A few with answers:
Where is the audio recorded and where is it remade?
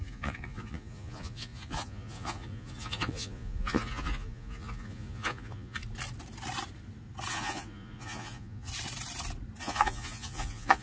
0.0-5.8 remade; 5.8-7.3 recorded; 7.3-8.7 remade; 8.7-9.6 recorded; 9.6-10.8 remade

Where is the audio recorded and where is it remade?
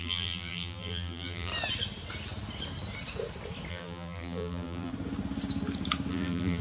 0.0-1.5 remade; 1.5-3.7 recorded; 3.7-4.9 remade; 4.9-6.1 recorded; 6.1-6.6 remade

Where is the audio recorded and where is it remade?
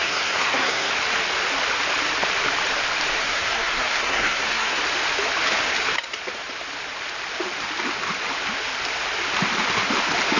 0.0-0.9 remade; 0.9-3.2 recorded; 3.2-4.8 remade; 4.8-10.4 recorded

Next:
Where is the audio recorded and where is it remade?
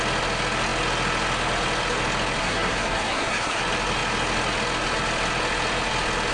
0.0-2.4 recorded; 2.4-3.6 remade; 3.6-6.3 recorded